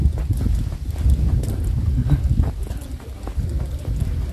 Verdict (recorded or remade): recorded